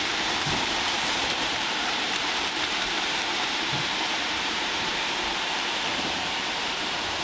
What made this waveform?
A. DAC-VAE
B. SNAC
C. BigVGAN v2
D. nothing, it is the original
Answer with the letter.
C